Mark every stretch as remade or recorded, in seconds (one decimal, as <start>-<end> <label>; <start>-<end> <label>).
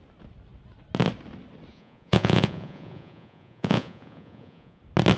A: 0.0-1.7 recorded; 1.7-4.8 remade; 4.8-5.2 recorded